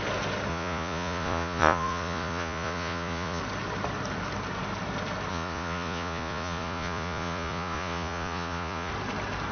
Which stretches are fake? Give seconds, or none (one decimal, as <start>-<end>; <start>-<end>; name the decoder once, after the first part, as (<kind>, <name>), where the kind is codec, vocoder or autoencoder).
0.5-3.4 (vocoder, Vocos); 5.3-8.9